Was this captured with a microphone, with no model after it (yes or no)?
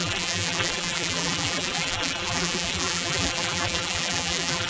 no